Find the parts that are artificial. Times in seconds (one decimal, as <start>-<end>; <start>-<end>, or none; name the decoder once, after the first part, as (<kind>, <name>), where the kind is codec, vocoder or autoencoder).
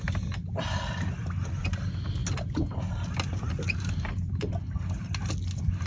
none